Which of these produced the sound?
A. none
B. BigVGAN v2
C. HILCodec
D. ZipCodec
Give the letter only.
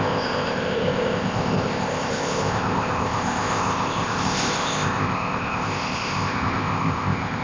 D